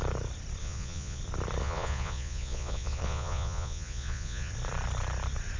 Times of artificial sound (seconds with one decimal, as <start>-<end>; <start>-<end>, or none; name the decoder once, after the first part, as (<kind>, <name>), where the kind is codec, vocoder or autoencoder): 0.6-1.2 (vocoder, Vocos); 1.6-4.5